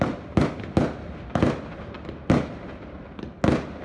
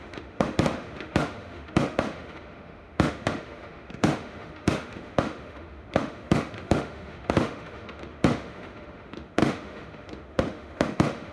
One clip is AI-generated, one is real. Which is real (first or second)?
first